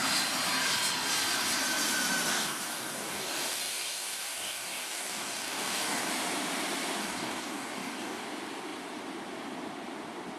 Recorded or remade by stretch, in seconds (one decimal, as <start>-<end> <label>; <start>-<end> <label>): 0.0-2.3 recorded; 2.3-6.1 remade; 6.1-7.0 recorded; 7.0-8.2 remade; 8.2-10.4 recorded